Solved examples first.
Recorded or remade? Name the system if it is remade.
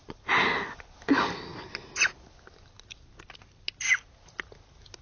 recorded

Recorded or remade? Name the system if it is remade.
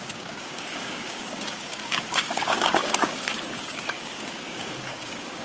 remade, codec, DAC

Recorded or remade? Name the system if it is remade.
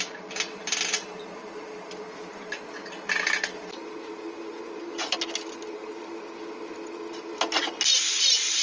recorded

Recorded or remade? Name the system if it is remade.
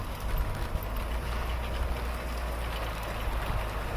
recorded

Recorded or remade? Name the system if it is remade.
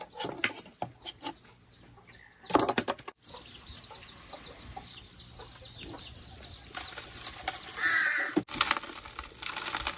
recorded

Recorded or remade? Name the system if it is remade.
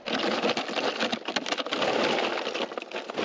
recorded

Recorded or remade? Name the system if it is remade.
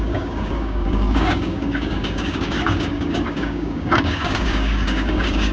remade, codec, DAC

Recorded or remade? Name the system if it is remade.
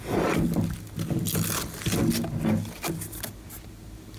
recorded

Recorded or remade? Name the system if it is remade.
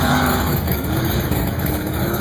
remade, codec, DAC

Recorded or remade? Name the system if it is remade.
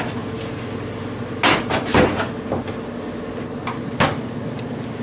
recorded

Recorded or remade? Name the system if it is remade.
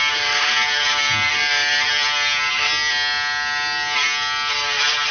recorded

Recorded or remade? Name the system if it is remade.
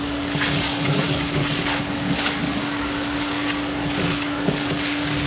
remade, codec, DAC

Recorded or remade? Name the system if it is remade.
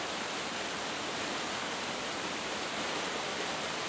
recorded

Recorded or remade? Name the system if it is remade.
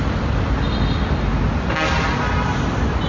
recorded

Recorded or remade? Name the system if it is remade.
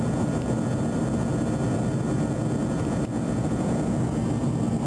recorded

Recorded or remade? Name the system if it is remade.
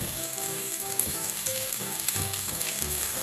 remade, codec, DAC